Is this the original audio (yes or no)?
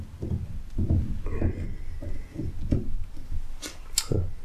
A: yes